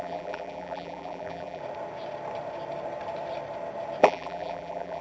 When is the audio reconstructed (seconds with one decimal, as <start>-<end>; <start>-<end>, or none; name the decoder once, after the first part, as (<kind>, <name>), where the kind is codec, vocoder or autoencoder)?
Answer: 0.0-1.6 (vocoder, BigVGAN v2); 4.0-5.0